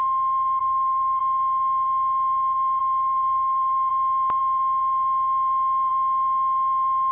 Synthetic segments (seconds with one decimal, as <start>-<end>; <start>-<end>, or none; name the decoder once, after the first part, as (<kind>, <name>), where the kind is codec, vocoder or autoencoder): 0.6-1.2 (codec, DAC); 2.8-3.9